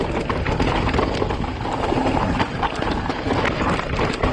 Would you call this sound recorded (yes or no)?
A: yes